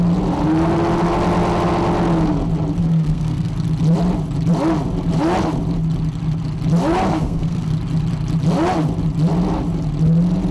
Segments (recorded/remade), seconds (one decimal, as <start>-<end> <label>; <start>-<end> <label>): 0.0-2.8 recorded; 2.8-3.5 remade; 3.5-7.1 recorded; 7.1-7.7 remade; 7.7-10.5 recorded